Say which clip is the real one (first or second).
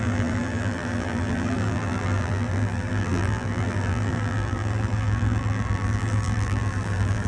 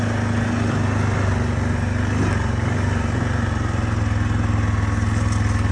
second